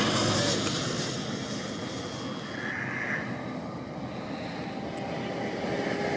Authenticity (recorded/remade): recorded